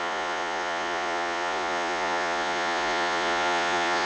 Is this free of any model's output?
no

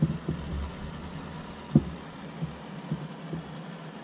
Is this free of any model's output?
yes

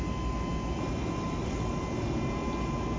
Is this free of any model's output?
yes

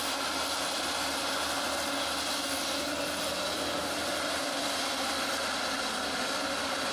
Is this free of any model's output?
yes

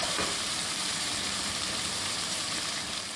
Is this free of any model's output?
no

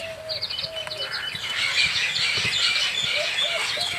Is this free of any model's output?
yes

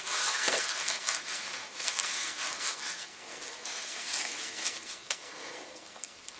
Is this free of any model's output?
no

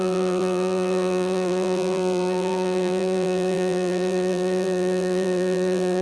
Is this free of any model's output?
no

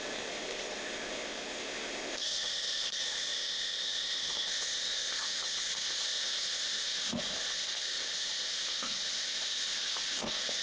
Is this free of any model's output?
no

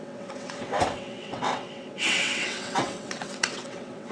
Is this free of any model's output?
no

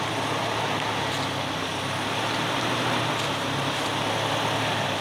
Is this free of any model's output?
yes